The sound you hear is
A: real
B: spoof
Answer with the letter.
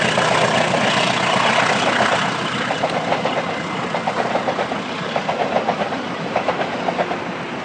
B